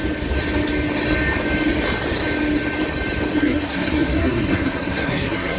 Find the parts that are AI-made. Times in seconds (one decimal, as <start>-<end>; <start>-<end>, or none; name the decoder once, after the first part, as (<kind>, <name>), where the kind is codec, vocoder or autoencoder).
3.4-5.6 (codec, SNAC)